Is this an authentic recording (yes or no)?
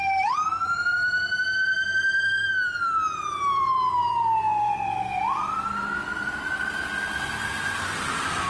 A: no